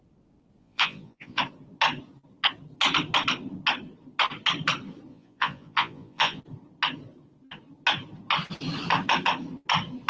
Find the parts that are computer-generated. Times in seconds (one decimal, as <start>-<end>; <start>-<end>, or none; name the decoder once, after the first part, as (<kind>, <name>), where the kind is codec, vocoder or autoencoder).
0.6-1.4 (vocoder, Vocos); 5.1-6.4